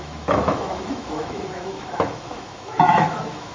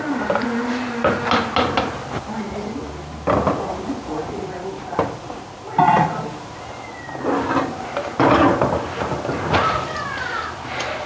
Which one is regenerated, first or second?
first